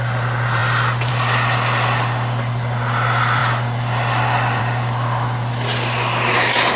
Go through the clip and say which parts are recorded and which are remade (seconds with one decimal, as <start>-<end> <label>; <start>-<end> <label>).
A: 0.0-6.8 recorded